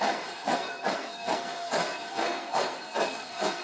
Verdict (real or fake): fake